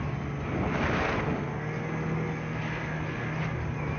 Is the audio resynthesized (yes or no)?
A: no